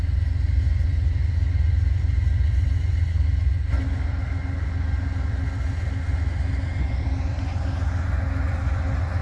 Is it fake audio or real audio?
real